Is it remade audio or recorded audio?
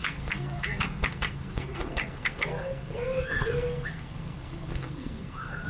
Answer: remade